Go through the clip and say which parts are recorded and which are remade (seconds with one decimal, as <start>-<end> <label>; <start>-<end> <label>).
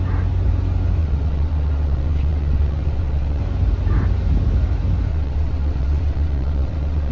0.0-1.0 recorded; 1.0-3.4 remade; 3.4-5.1 recorded; 5.1-7.1 remade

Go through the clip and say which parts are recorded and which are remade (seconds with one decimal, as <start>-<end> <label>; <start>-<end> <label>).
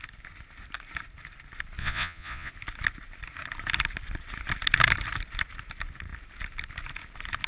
0.0-1.8 recorded; 1.8-2.5 remade; 2.5-7.5 recorded